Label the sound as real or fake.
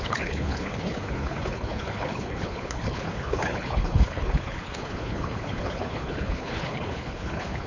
fake